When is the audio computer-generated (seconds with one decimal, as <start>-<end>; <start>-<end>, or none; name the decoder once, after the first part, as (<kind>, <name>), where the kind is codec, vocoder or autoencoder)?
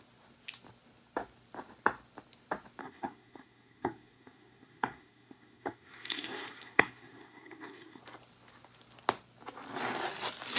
2.8-8.0 (codec, SNAC)